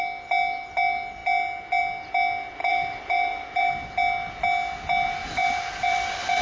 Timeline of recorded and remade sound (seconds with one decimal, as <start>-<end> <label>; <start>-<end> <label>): 0.0-2.6 recorded; 2.6-3.7 remade; 3.7-5.2 recorded; 5.2-6.4 remade